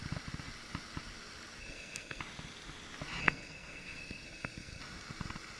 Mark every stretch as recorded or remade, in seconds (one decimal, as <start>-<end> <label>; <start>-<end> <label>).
0.0-1.6 recorded; 1.6-2.2 remade; 2.2-3.2 recorded; 3.2-4.8 remade; 4.8-5.6 recorded